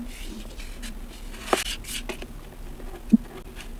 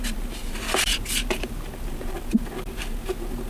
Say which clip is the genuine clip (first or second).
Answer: first